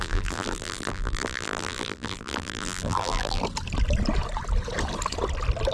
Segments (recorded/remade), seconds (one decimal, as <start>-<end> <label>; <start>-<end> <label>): 0.0-3.4 remade; 3.4-5.7 recorded